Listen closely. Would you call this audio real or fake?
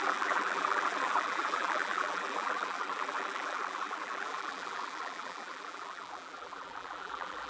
fake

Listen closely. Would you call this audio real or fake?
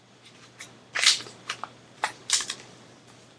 real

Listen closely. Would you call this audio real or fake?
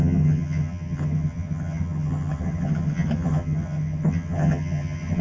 fake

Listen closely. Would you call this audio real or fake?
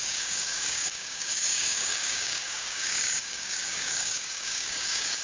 fake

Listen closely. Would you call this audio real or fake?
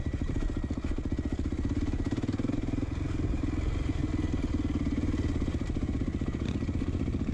real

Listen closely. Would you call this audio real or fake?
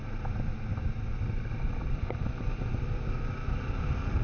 real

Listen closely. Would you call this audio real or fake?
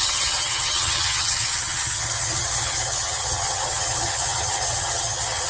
fake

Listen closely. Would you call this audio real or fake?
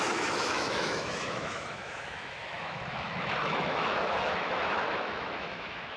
fake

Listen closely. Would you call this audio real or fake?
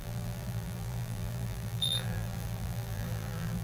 fake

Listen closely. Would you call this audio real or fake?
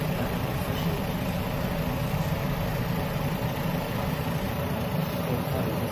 fake